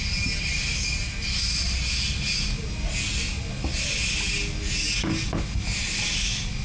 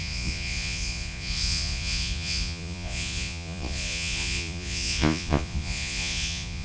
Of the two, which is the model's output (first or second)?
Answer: second